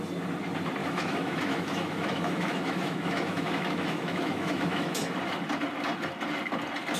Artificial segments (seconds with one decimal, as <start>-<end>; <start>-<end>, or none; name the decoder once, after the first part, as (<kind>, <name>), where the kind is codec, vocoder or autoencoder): 0.8-5.0 (autoencoder, DAC-VAE)